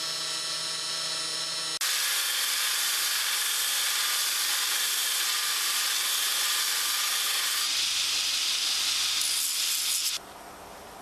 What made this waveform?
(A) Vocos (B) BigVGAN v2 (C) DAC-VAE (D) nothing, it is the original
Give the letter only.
D